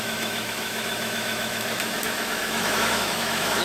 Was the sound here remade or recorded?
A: remade